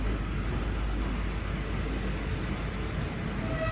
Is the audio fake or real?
real